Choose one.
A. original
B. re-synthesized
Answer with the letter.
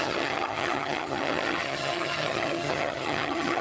B